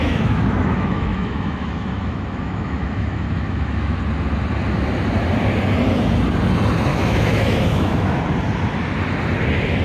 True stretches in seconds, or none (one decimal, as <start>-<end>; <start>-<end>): 4.0-6.9; 8.2-9.8